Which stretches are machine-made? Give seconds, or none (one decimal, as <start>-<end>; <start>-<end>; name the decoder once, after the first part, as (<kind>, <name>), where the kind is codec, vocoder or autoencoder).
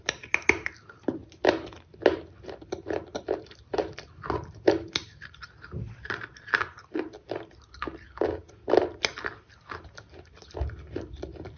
none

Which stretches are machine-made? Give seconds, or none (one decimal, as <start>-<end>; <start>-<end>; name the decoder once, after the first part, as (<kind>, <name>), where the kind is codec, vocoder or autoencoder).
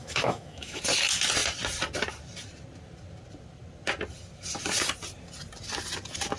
0.0-0.8 (autoencoder, DAC-VAE)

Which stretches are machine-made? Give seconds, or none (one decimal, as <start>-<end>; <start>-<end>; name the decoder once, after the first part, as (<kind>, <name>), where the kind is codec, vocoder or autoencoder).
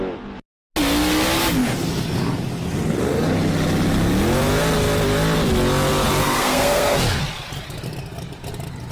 6.2-7.0 (codec, SNAC)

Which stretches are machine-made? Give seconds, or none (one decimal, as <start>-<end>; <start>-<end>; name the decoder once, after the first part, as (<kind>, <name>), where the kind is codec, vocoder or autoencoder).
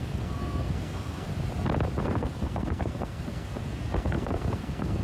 0.0-1.3 (codec, SNAC); 2.0-5.0